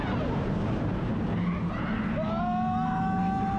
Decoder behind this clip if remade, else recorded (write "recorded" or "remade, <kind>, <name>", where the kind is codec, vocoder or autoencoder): recorded